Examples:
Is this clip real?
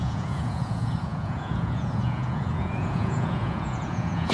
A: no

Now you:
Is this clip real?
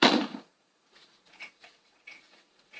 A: no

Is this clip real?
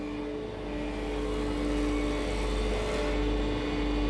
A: yes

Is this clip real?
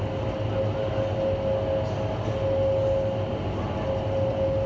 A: yes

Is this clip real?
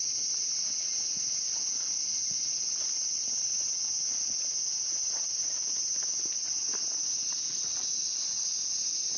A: yes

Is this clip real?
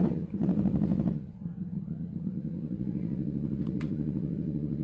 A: no